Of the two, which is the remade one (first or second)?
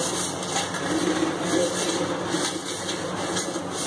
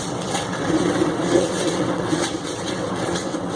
second